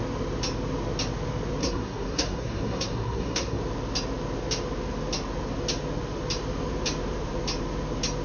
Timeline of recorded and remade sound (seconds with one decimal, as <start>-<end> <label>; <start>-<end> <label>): 0.0-1.6 recorded; 1.6-3.6 remade; 3.6-8.2 recorded